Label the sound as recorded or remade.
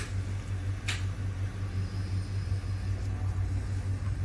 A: recorded